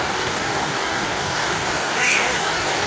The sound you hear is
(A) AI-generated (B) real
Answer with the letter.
A